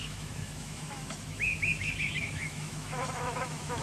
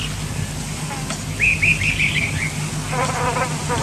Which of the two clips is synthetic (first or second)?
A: first